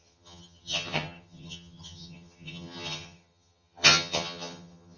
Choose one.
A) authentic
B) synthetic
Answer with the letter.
B